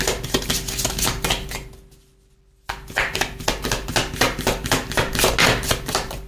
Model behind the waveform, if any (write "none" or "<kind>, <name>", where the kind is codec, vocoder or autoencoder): none